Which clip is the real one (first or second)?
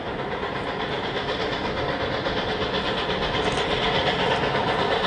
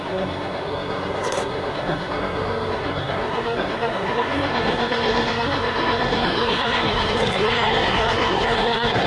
first